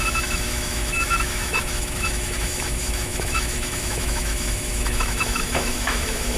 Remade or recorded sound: remade